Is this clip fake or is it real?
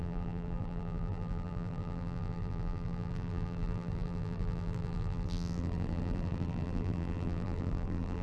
fake